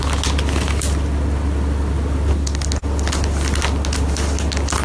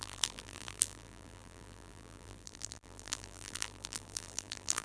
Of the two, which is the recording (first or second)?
first